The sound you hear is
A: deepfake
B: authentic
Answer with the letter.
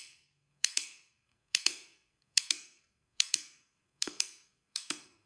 A